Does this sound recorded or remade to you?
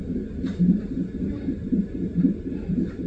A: recorded